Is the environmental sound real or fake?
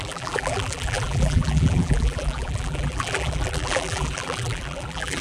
fake